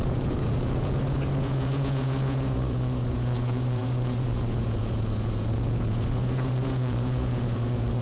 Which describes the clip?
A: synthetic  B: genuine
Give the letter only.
A